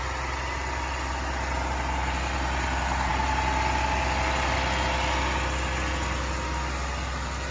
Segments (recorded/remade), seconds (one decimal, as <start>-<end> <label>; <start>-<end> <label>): 0.0-7.5 recorded